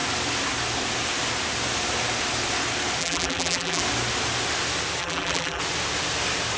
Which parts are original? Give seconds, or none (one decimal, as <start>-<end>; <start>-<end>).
0.0-3.0; 3.8-5.0; 5.6-6.6